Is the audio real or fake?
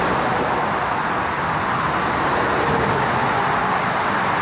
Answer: real